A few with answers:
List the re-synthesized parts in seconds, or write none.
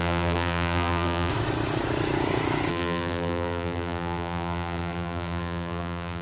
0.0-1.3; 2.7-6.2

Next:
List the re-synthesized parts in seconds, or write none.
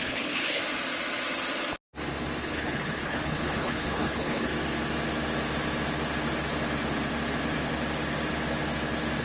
0.0-0.6; 2.4-4.5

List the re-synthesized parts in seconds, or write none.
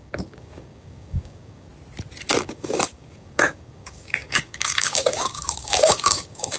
0.0-1.7; 2.4-6.6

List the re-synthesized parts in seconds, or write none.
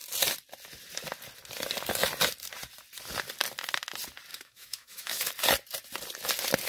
4.3-5.3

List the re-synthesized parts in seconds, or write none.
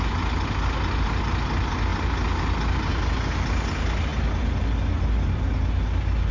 none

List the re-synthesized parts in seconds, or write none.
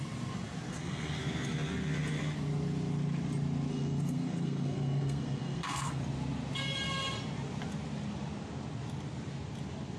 0.7-1.2; 3.7-6.0